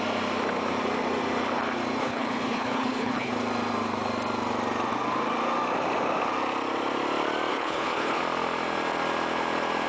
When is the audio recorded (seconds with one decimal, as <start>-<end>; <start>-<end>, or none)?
0.0-2.0; 3.3-7.5; 8.2-9.9